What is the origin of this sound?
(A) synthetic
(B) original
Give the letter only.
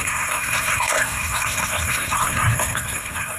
A